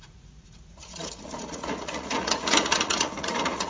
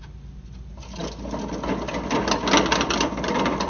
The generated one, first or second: first